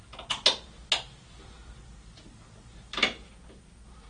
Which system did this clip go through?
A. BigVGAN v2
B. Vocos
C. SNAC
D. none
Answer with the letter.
D